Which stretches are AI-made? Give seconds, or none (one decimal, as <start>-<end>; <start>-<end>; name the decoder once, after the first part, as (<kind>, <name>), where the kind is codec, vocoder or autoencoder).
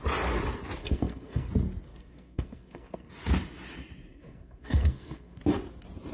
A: 0.8-1.5 (codec, SNAC); 1.9-3.1; 4.1-5.4